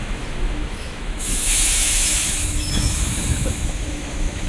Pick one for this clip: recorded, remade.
remade